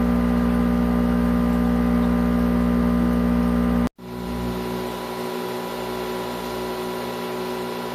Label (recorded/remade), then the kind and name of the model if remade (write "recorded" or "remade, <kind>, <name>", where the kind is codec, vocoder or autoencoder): recorded